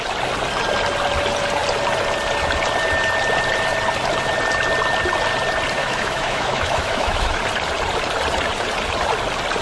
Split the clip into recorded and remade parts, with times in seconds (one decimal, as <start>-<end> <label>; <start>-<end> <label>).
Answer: 0.0-5.8 recorded; 5.8-7.4 remade; 7.4-9.6 recorded